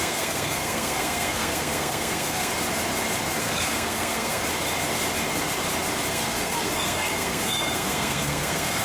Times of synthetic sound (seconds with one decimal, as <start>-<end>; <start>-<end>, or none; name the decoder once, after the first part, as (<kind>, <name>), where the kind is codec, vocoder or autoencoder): 0.0-2.5 (codec, SNAC); 3.4-4.4; 6.1-8.8